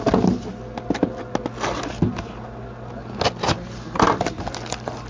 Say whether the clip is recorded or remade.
recorded